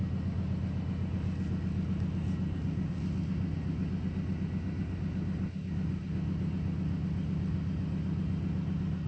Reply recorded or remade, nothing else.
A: recorded